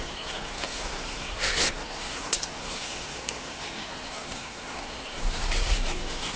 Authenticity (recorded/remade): remade